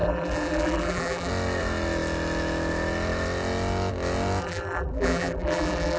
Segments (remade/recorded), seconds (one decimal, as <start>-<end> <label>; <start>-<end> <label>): 0.0-1.3 remade; 1.3-4.4 recorded; 4.4-6.0 remade